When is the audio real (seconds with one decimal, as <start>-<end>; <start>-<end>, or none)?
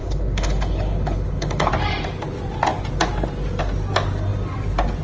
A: 1.7-5.0